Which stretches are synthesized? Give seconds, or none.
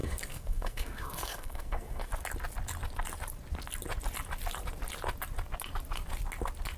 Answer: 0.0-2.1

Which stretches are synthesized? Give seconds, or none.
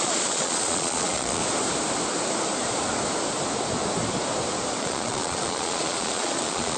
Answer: 0.0-1.4; 4.8-6.8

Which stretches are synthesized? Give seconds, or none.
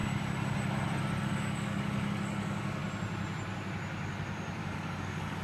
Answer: 1.2-2.8; 4.6-5.4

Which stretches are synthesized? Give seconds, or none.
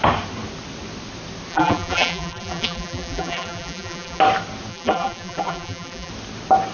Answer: 1.5-4.2; 4.7-6.1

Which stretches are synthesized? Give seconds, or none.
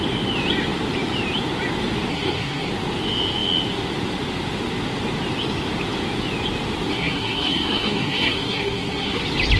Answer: 2.1-2.7; 6.9-9.2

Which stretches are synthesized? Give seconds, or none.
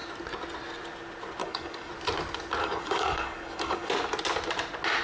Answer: 1.4-1.9; 2.6-3.9